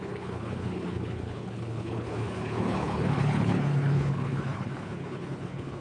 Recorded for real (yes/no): no